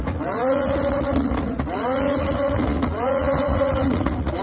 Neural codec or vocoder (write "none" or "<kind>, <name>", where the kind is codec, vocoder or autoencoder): vocoder, Vocos